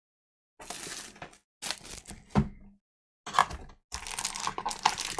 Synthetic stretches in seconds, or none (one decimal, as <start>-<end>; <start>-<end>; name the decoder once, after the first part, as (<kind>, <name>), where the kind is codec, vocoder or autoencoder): none